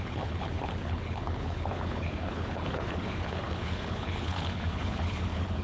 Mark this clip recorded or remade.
remade